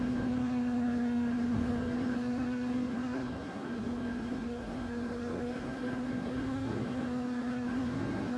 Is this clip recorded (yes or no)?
no